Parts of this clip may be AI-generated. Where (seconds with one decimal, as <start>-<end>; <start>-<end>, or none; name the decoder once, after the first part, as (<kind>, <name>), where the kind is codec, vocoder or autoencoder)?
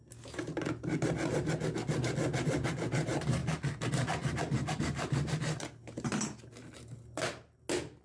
none